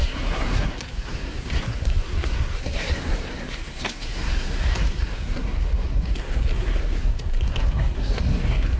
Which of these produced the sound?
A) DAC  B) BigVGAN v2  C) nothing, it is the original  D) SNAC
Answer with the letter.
D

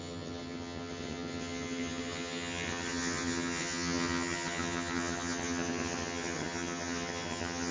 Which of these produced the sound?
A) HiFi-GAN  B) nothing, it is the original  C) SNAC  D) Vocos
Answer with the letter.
A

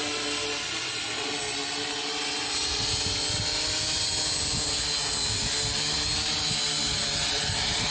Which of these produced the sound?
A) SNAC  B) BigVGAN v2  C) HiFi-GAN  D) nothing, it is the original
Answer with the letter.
D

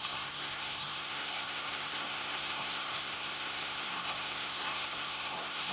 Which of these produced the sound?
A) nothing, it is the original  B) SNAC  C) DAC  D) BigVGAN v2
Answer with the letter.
B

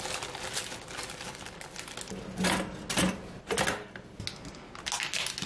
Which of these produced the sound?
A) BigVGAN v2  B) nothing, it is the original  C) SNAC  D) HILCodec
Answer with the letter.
B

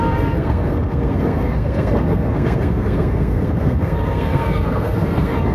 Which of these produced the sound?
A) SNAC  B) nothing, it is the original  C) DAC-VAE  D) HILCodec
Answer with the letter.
A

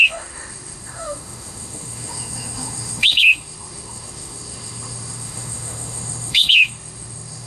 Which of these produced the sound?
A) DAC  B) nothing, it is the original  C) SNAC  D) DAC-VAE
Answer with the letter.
D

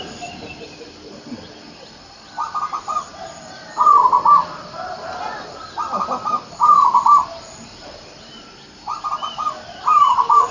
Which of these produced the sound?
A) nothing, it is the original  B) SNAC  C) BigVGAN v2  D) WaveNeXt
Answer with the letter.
A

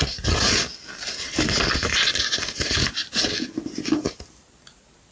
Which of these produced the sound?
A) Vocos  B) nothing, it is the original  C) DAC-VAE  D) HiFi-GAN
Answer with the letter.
B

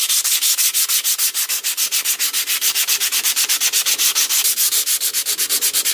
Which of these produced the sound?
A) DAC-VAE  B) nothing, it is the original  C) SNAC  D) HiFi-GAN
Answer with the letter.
B